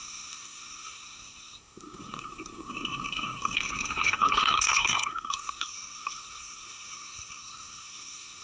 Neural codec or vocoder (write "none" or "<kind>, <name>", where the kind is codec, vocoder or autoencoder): codec, SNAC